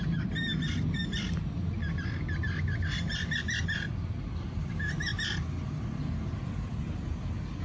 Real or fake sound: real